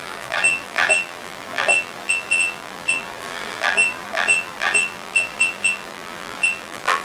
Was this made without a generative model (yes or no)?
no